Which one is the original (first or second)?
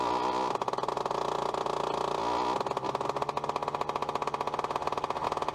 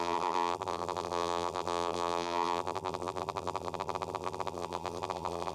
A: first